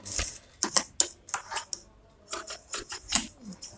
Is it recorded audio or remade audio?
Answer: recorded